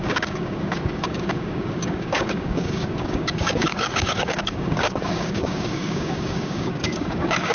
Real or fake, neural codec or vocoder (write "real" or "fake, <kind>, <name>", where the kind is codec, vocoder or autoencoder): fake, codec, DAC